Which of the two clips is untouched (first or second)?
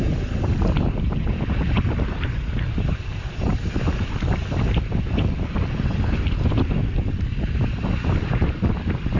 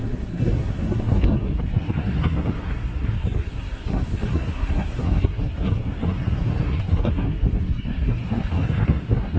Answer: first